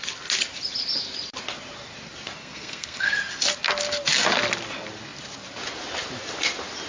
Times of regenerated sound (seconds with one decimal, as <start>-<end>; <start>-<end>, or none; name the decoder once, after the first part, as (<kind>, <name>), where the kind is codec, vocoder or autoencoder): 2.4-3.2 (codec, SNAC)